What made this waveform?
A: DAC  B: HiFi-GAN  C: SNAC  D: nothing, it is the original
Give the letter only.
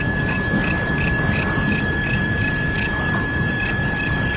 A